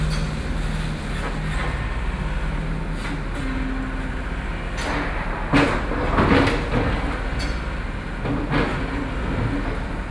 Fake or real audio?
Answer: real